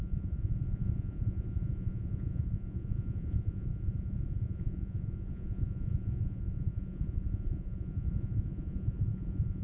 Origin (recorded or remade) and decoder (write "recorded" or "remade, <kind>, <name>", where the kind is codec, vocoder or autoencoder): remade, vocoder, Vocos